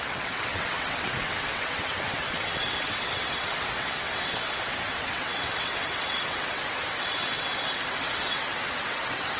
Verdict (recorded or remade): remade